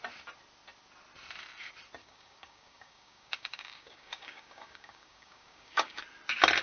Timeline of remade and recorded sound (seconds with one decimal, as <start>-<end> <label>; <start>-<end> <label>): 0.0-2.0 recorded; 2.0-6.0 remade; 6.0-6.6 recorded